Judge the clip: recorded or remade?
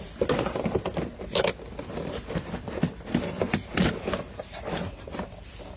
recorded